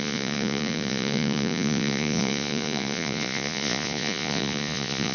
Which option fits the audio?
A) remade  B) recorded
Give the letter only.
A